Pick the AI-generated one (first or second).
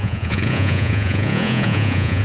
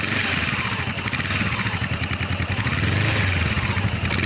first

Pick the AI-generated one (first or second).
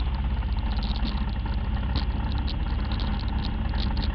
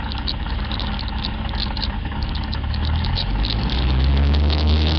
second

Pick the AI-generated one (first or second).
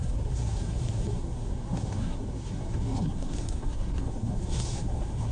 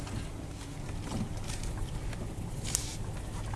first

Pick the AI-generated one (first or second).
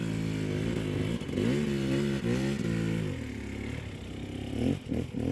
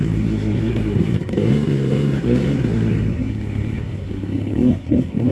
second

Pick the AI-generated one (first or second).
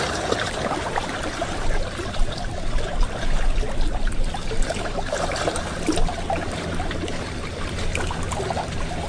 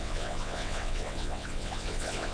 second